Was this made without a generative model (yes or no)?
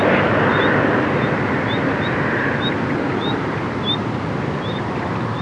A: yes